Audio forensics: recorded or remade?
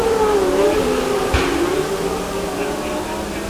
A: recorded